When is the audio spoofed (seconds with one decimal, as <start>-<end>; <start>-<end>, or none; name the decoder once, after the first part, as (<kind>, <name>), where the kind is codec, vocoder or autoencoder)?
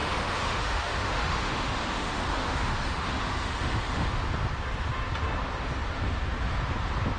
0.0-4.1 (autoencoder, DAC-VAE)